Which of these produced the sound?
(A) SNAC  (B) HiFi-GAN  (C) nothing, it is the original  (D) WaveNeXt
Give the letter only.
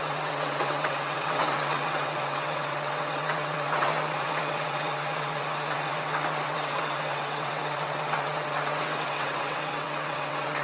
D